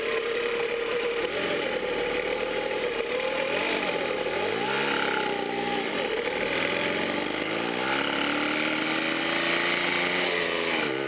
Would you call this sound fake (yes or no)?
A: no